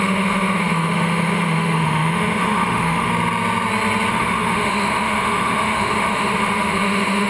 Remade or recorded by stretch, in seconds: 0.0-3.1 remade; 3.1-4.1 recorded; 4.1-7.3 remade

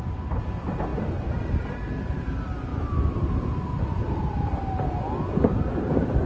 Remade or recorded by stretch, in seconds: 0.0-6.3 recorded

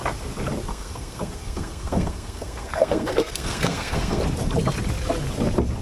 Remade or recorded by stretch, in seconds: 0.0-0.7 recorded; 0.7-4.2 remade; 4.2-5.8 recorded

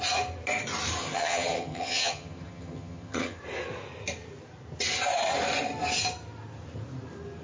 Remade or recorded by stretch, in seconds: 0.0-1.0 recorded; 1.0-3.4 remade; 3.4-7.4 recorded

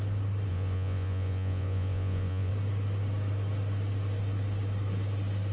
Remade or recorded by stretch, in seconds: 0.0-0.5 recorded; 0.5-2.5 remade; 2.5-5.5 recorded

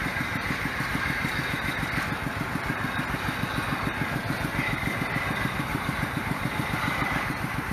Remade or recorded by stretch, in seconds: 0.0-1.3 remade; 1.3-5.7 recorded; 5.7-7.7 remade